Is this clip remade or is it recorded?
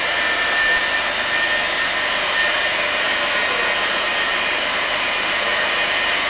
remade